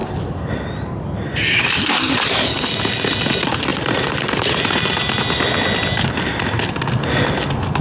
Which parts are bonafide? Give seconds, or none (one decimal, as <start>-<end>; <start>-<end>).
0.0-7.8